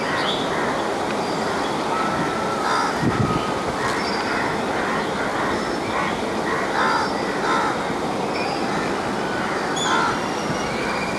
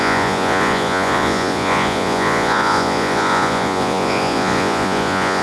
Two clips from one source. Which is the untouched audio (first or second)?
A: first